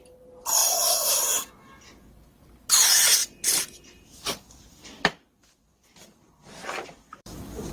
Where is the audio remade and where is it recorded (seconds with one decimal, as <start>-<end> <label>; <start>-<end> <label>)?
0.0-0.6 recorded; 0.6-1.5 remade; 1.5-3.2 recorded; 3.2-7.7 remade

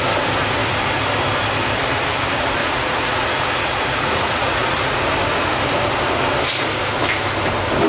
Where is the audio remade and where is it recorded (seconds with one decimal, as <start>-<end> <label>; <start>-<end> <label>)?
0.0-2.6 recorded; 2.6-5.0 remade; 5.0-7.9 recorded

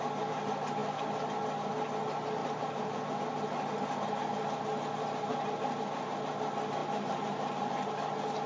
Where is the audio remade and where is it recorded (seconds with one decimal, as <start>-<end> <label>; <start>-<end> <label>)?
0.0-2.4 recorded; 2.4-3.2 remade; 3.2-6.8 recorded; 6.8-7.9 remade; 7.9-8.5 recorded

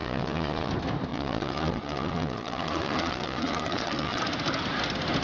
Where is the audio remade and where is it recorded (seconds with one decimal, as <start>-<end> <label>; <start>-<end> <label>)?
0.0-0.7 remade; 0.7-1.1 recorded; 1.1-4.2 remade; 4.2-5.2 recorded